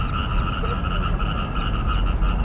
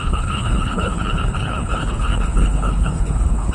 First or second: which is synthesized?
second